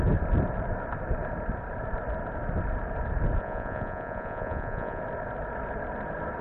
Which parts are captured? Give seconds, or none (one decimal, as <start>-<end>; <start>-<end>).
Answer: 0.0-3.4; 5.0-6.4